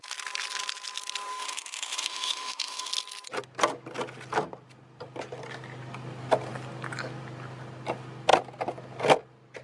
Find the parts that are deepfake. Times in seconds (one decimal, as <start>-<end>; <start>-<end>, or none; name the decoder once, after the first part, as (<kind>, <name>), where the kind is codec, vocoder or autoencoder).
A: 1.3-2.9 (autoencoder, DAC-VAE)